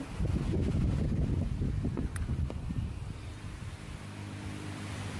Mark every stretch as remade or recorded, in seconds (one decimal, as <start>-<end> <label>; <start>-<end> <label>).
0.0-1.9 recorded; 1.9-2.7 remade; 2.7-5.2 recorded